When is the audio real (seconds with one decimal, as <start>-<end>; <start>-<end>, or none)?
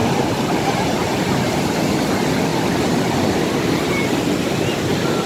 1.3-5.3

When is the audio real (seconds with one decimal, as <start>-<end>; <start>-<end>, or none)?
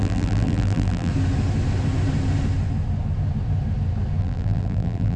1.1-4.2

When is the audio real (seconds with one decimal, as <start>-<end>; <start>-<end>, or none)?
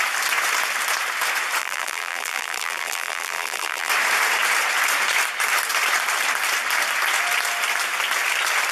0.0-1.6; 3.9-8.7